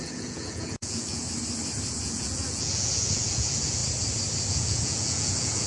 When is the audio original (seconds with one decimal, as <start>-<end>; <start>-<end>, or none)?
1.2-2.0; 3.8-4.5